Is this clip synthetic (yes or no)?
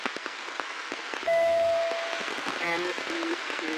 yes